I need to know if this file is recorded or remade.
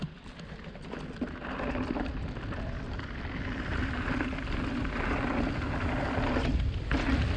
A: recorded